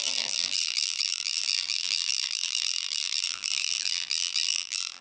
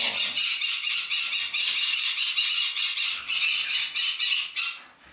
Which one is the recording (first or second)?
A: second